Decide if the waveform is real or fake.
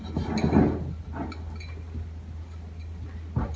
real